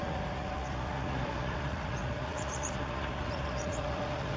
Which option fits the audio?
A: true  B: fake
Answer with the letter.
B